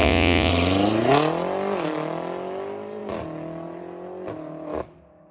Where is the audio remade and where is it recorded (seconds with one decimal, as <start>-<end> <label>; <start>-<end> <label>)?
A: 0.0-0.5 remade; 0.5-5.3 recorded